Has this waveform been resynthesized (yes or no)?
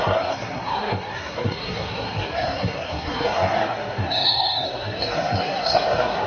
yes